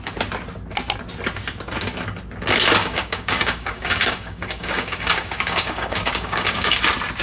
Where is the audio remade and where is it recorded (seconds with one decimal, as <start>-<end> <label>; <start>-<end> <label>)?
0.0-2.8 recorded; 2.8-6.8 remade; 6.8-7.2 recorded